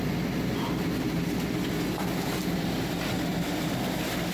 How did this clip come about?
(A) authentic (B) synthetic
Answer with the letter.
A